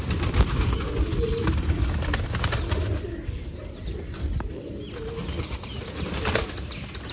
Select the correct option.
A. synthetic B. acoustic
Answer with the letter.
B